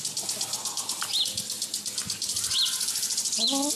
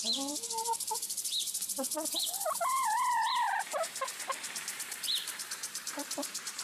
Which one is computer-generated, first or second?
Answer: second